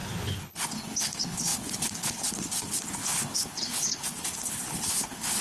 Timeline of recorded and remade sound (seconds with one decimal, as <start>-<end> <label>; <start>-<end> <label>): 0.0-5.4 remade